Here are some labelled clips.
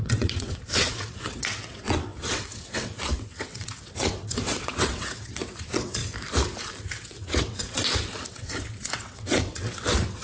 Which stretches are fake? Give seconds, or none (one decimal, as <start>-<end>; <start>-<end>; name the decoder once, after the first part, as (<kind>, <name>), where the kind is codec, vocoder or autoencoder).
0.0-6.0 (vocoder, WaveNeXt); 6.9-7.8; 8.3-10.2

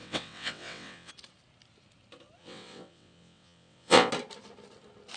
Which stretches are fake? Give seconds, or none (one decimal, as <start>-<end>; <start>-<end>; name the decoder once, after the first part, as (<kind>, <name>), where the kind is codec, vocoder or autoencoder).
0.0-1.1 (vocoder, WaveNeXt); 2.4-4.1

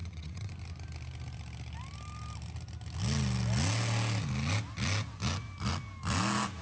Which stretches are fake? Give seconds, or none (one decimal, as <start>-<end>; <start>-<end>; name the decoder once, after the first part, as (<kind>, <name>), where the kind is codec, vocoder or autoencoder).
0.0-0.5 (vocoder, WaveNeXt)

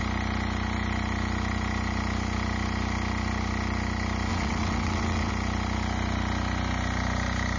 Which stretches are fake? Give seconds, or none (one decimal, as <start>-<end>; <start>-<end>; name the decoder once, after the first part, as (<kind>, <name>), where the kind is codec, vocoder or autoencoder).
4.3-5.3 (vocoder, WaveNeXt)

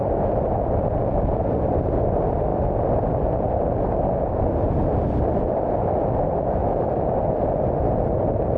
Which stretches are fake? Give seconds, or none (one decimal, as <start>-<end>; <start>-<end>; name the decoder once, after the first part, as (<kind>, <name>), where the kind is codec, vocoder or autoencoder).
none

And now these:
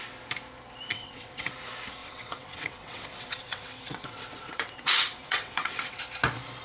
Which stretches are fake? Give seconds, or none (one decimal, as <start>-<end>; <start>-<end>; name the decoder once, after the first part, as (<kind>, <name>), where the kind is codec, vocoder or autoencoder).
0.9-1.5 (vocoder, WaveNeXt); 2.0-6.0